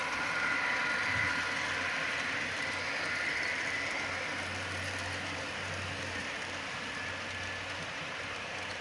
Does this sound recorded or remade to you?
remade